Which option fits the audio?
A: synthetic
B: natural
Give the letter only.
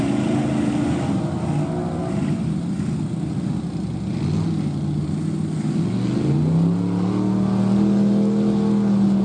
B